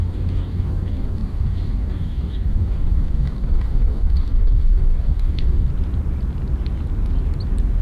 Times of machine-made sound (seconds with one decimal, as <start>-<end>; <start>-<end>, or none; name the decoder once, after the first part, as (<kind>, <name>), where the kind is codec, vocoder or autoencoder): 0.0-5.7 (codec, DAC)